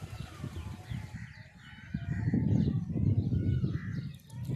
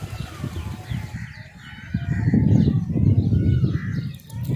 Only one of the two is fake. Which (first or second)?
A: first